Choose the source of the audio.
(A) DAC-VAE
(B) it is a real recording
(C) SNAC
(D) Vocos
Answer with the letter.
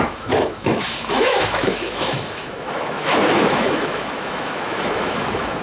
A